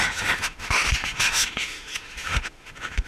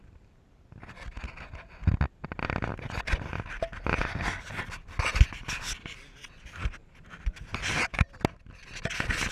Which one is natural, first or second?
second